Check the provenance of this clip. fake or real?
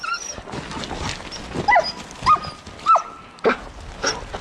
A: real